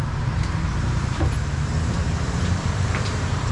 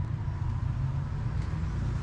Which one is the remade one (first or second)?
first